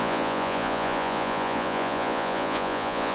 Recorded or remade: remade